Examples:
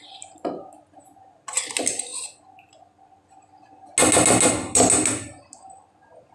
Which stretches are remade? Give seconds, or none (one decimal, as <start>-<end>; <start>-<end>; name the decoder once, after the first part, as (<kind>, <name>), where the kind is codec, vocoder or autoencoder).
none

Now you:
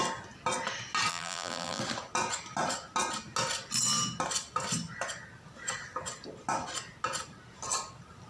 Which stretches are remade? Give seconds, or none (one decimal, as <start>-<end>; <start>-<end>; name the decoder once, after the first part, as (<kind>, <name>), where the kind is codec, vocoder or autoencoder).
1.1-1.8 (vocoder, BigVGAN v2)

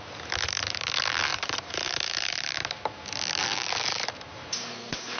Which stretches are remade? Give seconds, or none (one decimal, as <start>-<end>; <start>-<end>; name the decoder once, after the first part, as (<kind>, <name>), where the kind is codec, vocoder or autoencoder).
1.3-3.0 (vocoder, BigVGAN v2); 3.4-5.2

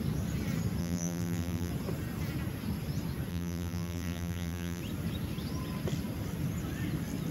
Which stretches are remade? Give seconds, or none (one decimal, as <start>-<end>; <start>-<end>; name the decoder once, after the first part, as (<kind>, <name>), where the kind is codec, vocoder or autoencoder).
0.8-1.7 (vocoder, BigVGAN v2); 3.3-4.8

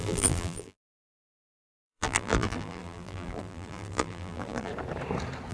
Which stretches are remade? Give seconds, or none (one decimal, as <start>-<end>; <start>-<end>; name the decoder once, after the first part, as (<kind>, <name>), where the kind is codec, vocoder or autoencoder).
0.0-4.7 (vocoder, BigVGAN v2)

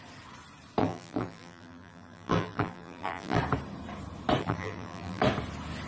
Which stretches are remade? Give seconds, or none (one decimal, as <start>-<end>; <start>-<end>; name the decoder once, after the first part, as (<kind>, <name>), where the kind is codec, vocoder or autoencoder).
0.8-3.4 (vocoder, BigVGAN v2); 4.4-5.2

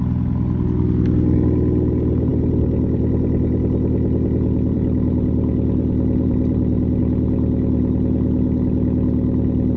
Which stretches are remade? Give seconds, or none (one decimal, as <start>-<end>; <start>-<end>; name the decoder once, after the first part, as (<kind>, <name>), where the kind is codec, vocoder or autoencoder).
2.3-7.0 (vocoder, BigVGAN v2)

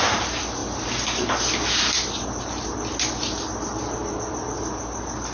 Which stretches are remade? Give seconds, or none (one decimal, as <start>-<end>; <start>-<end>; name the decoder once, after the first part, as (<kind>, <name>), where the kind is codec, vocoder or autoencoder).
none